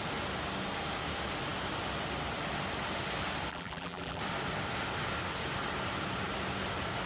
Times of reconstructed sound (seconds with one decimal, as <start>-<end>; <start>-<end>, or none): 3.5-4.2